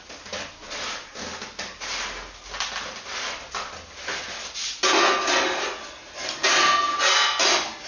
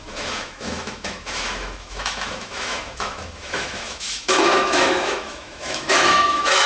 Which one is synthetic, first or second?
second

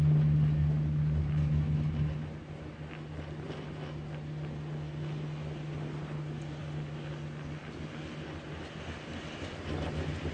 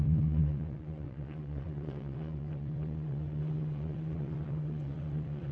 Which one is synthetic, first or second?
second